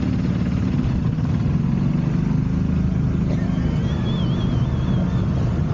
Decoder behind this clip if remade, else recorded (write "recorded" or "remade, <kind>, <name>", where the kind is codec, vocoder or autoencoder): recorded